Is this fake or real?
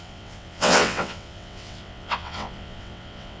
fake